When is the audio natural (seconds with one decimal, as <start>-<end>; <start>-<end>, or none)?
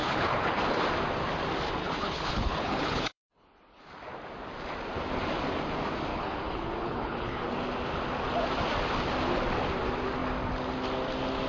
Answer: 0.8-1.8; 3.8-6.1; 7.5-11.5